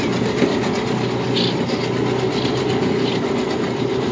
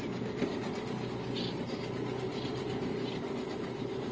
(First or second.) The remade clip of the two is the second